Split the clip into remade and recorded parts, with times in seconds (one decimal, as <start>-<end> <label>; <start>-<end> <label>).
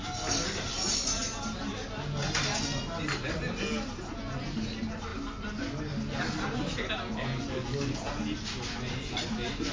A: 0.0-9.7 recorded